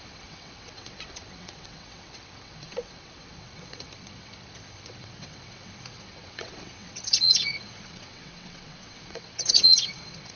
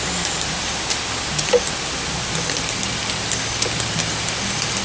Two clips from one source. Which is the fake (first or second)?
first